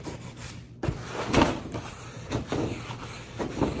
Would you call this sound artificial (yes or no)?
no